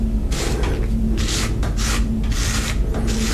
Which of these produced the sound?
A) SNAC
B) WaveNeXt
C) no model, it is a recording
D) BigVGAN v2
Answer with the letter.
C